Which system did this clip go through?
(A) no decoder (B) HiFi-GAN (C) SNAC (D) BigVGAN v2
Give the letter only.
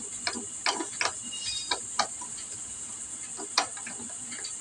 A